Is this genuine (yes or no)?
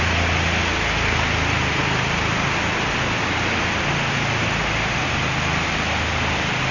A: yes